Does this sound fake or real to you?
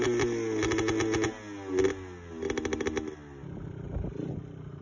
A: real